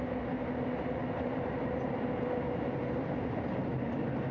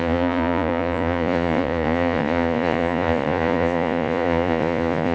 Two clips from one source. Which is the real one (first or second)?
first